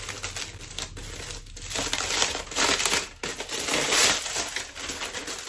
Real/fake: real